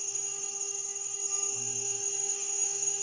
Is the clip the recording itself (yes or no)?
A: no